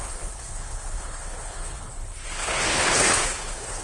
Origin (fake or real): fake